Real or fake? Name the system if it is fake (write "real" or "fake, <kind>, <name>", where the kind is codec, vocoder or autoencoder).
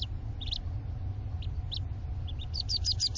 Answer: real